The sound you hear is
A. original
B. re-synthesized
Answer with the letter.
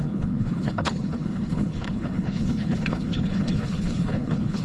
B